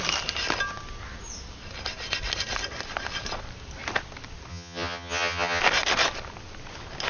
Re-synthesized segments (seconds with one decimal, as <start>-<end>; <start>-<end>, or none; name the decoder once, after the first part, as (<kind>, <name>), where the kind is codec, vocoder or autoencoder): 4.5-5.6 (vocoder, HiFi-GAN)